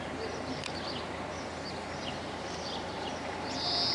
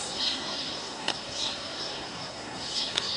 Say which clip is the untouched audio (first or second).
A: first